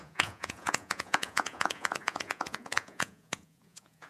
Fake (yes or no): yes